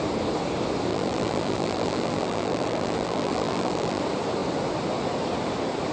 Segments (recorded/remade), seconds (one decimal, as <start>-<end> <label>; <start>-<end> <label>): 0.0-0.9 recorded; 0.9-4.0 remade; 4.0-5.9 recorded